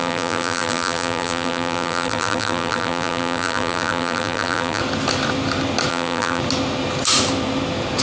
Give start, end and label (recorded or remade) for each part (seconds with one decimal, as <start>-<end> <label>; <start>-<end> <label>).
0.0-4.8 remade; 4.8-5.9 recorded; 5.9-6.4 remade; 6.4-8.0 recorded